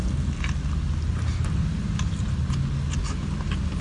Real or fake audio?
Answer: real